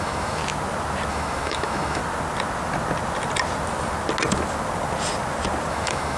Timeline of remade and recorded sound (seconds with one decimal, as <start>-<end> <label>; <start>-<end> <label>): 0.0-0.4 remade; 0.4-1.1 recorded; 1.1-2.0 remade; 2.0-5.7 recorded; 5.7-6.2 remade